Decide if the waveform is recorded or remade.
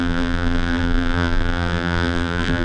remade